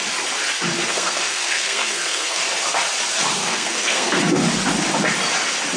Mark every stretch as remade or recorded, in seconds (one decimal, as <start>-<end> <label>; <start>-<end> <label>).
0.0-0.9 recorded; 0.9-2.4 remade; 2.4-3.4 recorded; 3.4-4.2 remade; 4.2-5.8 recorded